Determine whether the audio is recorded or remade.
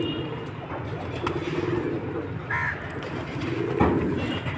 recorded